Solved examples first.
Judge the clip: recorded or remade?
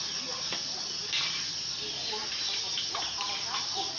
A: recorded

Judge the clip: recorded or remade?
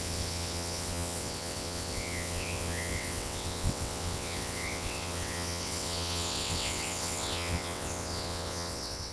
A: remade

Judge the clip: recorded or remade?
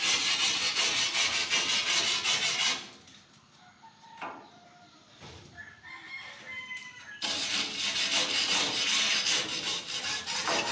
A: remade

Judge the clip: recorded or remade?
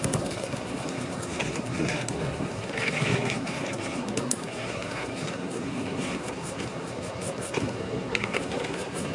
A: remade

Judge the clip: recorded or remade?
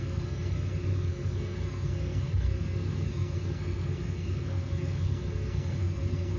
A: remade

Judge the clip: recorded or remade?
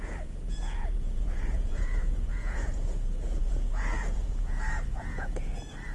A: remade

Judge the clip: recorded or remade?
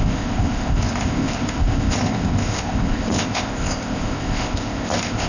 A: remade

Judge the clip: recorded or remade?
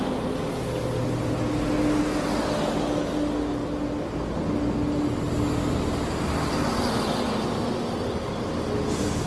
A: recorded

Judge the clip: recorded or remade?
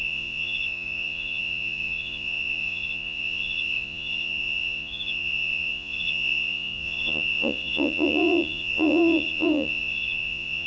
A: remade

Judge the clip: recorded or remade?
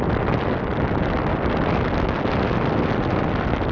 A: recorded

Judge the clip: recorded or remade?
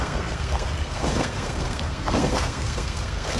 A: remade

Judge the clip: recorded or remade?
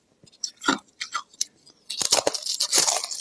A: recorded